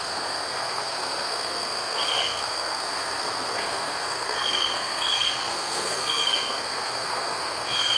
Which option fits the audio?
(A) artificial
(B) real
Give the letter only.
A